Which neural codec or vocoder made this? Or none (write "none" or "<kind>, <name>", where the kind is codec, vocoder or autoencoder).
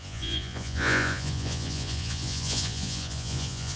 vocoder, Vocos